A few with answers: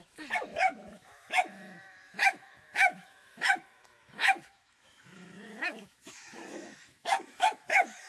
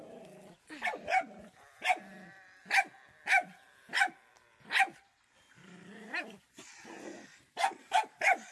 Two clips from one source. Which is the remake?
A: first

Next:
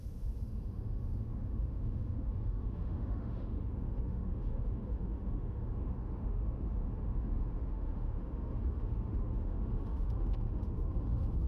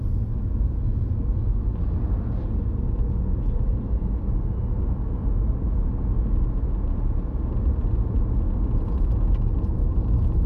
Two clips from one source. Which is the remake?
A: first